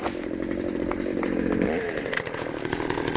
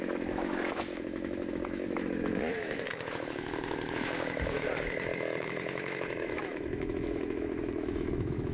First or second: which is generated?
second